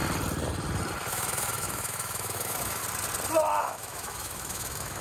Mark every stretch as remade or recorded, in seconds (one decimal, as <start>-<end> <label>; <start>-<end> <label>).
0.0-1.1 recorded; 1.1-2.8 remade; 2.8-3.6 recorded; 3.6-5.0 remade